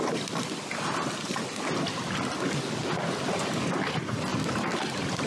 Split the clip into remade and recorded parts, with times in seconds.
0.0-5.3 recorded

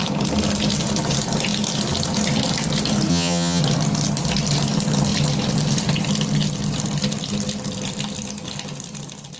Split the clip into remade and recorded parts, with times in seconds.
0.0-3.1 recorded; 3.1-3.6 remade; 3.6-9.4 recorded

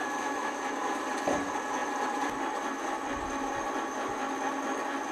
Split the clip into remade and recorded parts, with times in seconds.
0.0-0.6 remade; 0.6-5.1 recorded

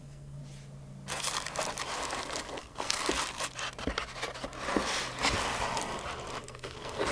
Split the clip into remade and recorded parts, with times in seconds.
0.0-0.4 remade; 0.4-2.6 recorded; 2.6-3.0 remade; 3.0-6.4 recorded; 6.4-7.1 remade

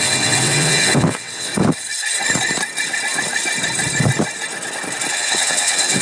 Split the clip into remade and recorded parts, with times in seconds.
0.0-1.5 remade; 1.5-5.1 recorded; 5.1-6.0 remade